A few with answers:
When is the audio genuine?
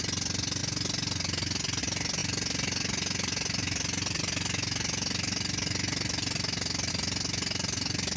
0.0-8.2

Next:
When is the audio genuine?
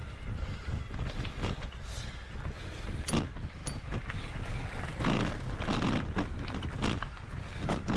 0.0-8.0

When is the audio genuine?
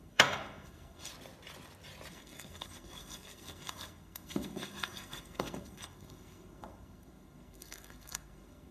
1.1-2.1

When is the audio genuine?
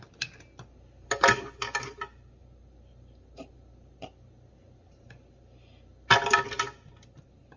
0.0-7.6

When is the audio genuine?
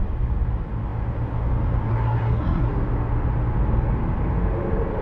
0.0-1.9; 2.7-5.0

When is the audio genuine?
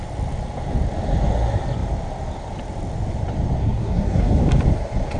0.0-3.6; 4.4-5.2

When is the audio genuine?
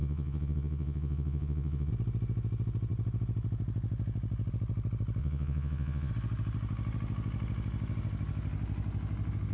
1.9-5.2; 6.1-9.5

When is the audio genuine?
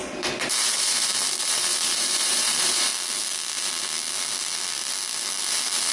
2.9-5.4